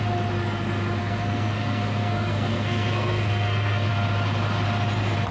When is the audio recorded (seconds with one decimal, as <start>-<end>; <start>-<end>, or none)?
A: 0.0-1.0; 3.9-5.3